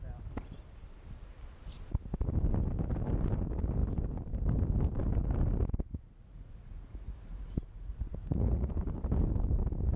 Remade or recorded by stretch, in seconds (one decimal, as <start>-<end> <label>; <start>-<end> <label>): 0.0-5.9 recorded; 5.9-8.7 remade; 8.7-10.0 recorded